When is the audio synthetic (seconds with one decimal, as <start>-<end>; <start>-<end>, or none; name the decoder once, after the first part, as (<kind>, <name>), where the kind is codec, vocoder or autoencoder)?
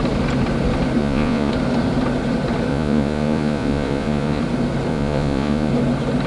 1.0-1.5 (vocoder, Vocos); 2.7-4.4; 4.9-5.7